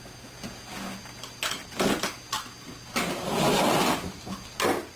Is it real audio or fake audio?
real